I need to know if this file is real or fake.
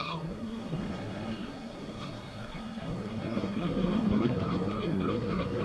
fake